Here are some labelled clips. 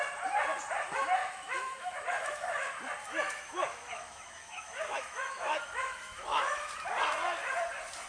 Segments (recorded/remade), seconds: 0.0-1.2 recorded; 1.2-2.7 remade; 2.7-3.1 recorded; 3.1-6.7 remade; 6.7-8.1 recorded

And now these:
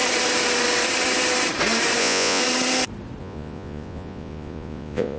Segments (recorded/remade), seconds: 0.0-2.0 recorded; 2.0-2.4 remade; 2.4-3.2 recorded; 3.2-5.2 remade

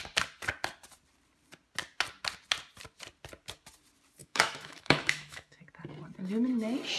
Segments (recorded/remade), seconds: 0.0-4.2 recorded; 4.2-5.6 remade; 5.6-7.0 recorded

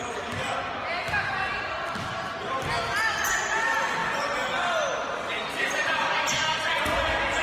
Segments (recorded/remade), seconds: 0.0-7.4 recorded

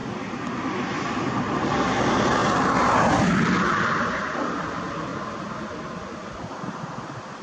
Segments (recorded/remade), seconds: 0.0-5.1 remade; 5.1-6.0 recorded; 6.0-7.4 remade

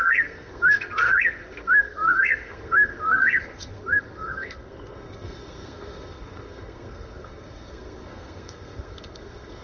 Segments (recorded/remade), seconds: 0.0-9.6 remade